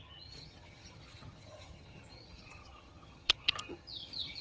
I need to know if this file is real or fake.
fake